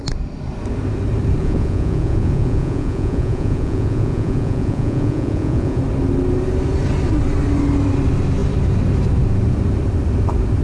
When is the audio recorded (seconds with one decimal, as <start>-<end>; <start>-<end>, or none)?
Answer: 0.0-1.4; 5.8-10.6